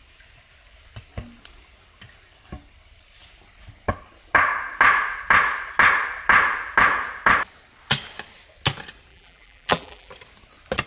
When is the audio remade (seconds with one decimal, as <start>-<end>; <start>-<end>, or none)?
9.1-10.1